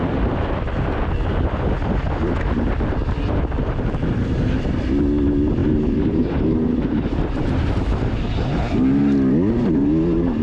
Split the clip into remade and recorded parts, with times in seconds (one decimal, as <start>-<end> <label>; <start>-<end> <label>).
0.0-5.6 recorded; 5.6-8.6 remade; 8.6-10.4 recorded